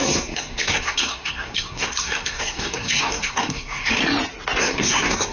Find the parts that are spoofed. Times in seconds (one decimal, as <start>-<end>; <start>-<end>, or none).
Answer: 0.0-4.0; 4.6-5.3